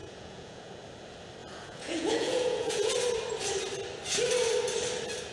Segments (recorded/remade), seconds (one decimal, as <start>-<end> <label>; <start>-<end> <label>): 0.0-0.7 remade; 0.7-1.4 recorded; 1.4-2.9 remade; 2.9-5.3 recorded